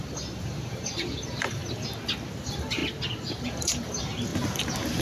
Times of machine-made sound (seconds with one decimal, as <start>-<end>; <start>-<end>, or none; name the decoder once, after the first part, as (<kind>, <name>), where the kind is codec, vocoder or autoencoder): 0.0-1.6 (vocoder, BigVGAN v2); 2.4-2.8; 3.4-4.3